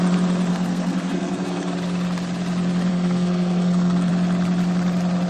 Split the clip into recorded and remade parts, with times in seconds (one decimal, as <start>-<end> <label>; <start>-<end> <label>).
0.0-0.5 recorded; 0.5-1.7 remade; 1.7-2.9 recorded; 2.9-4.1 remade; 4.1-5.3 recorded